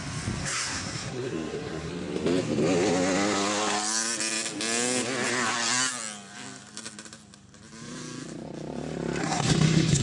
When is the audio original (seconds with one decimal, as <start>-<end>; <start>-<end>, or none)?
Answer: 0.0-0.4; 1.9-9.2